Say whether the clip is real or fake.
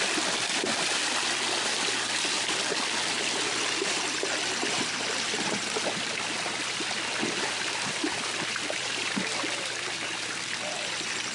fake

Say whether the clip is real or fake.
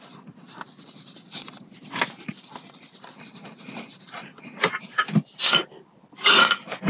real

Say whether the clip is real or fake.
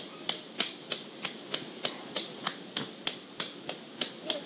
real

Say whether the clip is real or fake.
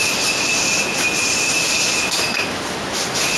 real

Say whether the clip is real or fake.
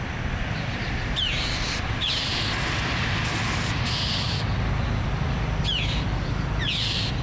fake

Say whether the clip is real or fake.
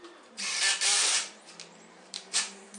fake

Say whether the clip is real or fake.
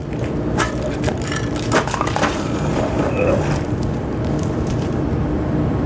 fake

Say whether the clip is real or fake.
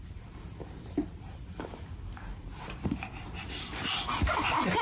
fake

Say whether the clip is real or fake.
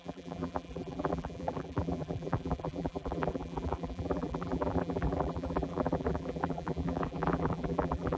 fake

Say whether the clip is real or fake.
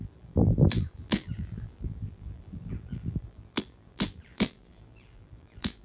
fake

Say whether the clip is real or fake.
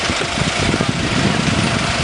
fake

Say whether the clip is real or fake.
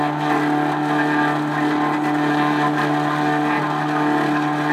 real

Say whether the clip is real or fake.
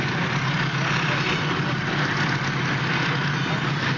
real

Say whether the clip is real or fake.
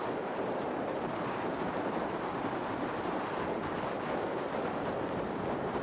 fake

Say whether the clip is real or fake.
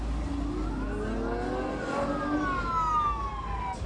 real